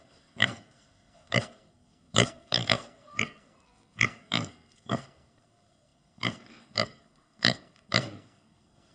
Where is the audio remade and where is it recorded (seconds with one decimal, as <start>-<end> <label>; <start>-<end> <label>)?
0.0-8.9 remade